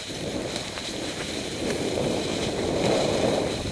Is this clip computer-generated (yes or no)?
yes